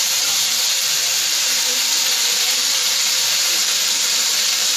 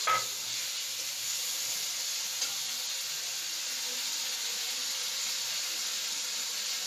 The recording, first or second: second